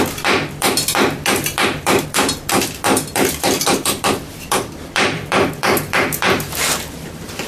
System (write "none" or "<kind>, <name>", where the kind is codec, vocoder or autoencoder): vocoder, BigVGAN v2